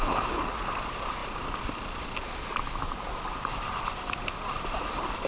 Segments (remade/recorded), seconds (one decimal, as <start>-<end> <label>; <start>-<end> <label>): 0.0-5.3 recorded